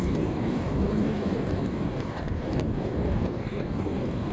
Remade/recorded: remade